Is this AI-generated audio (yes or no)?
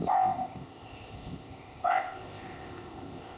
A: yes